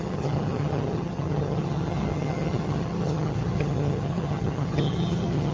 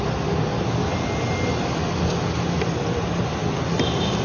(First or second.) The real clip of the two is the second